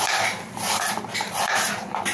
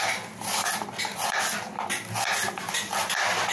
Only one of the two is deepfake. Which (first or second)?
first